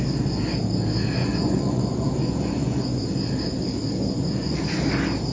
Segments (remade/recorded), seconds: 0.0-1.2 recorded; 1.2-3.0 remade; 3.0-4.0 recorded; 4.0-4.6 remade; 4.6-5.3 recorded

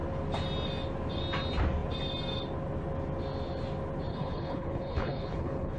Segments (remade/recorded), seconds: 0.0-4.1 recorded; 4.1-5.8 remade

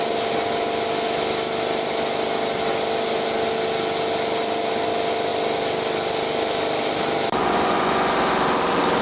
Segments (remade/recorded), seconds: 0.0-7.4 recorded; 7.4-8.1 remade; 8.1-9.0 recorded

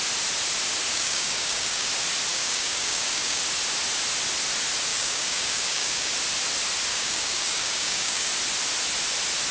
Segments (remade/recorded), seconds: 0.0-0.9 recorded; 0.9-1.9 remade; 1.9-2.3 recorded; 2.3-3.4 remade; 3.4-4.9 recorded; 4.9-6.1 remade; 6.1-6.9 recorded; 6.9-8.3 remade; 8.3-9.5 recorded